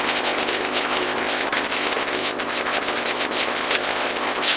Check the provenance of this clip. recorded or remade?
remade